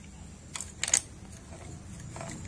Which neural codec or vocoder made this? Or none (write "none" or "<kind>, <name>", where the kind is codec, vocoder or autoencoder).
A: none